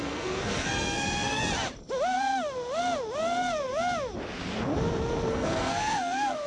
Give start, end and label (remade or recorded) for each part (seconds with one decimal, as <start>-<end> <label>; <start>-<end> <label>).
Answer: 0.0-1.4 remade; 1.4-5.3 recorded; 5.3-6.5 remade